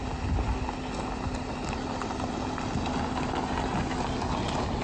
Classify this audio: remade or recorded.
recorded